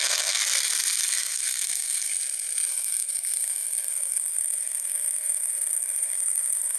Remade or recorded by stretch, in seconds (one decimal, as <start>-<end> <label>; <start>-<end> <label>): 0.0-0.4 remade; 0.4-1.0 recorded; 1.0-2.1 remade; 2.1-2.7 recorded; 2.7-6.8 remade